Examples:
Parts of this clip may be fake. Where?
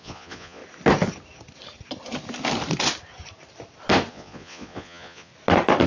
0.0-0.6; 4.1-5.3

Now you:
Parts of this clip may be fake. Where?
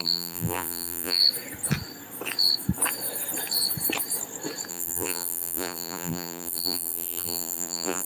0.0-1.2; 4.7-8.1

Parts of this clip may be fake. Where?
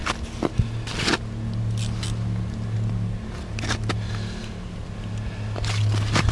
none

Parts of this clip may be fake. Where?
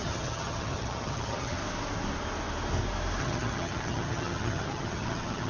0.0-1.6; 3.2-5.5